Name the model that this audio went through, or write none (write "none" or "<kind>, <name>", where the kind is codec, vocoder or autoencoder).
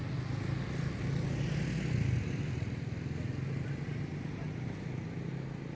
none